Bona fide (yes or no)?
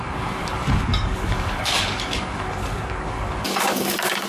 no